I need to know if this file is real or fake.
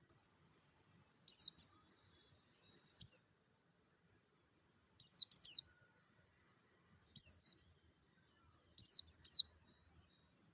real